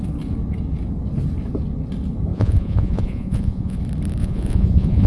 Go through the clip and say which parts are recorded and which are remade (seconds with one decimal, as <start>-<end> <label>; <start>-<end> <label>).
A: 0.0-2.3 recorded; 2.3-3.8 remade; 3.8-4.2 recorded; 4.2-5.1 remade